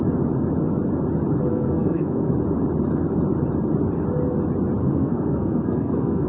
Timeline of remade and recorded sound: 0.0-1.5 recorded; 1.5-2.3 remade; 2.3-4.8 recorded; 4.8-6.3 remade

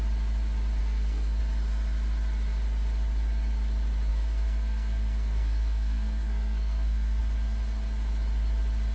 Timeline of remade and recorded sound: 0.0-0.8 recorded; 0.8-1.4 remade; 1.4-4.1 recorded; 4.1-7.2 remade; 7.2-8.9 recorded

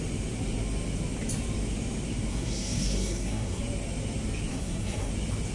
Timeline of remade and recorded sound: 0.0-2.3 recorded; 2.3-3.6 remade; 3.6-4.5 recorded; 4.5-5.1 remade; 5.1-5.5 recorded

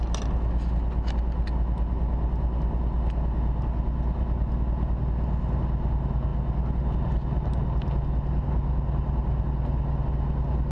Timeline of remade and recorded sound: 0.0-10.7 recorded

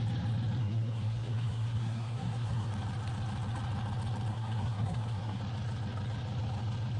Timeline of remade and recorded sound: 0.0-0.6 recorded; 0.6-2.7 remade; 2.7-4.3 recorded; 4.3-5.4 remade; 5.4-7.0 recorded

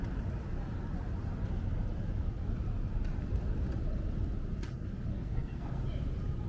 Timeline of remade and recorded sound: 0.0-5.1 recorded; 5.1-5.8 remade; 5.8-6.5 recorded

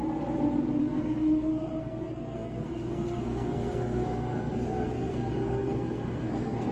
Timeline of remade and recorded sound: 0.0-0.8 recorded; 0.8-6.7 remade